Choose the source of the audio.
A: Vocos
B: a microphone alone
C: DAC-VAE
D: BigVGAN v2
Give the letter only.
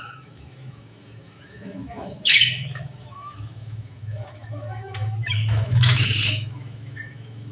C